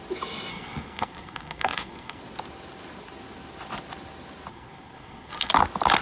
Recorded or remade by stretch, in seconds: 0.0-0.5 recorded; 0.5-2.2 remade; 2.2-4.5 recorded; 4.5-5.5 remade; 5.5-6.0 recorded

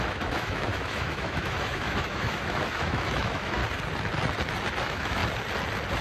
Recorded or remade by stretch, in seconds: 0.0-3.6 remade; 3.6-4.8 recorded; 4.8-5.2 remade; 5.2-6.0 recorded

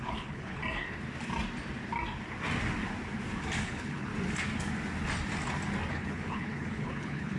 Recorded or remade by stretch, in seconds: 0.0-0.6 remade; 0.6-3.6 recorded; 3.6-4.1 remade; 4.1-5.9 recorded; 5.9-7.4 remade

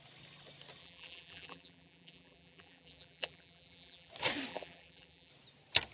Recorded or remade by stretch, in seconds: 0.0-0.8 recorded; 0.8-4.1 remade; 4.1-4.5 recorded; 4.5-5.3 remade; 5.3-5.9 recorded

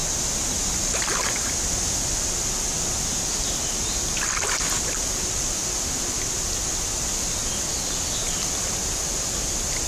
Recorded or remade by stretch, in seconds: 0.0-9.9 recorded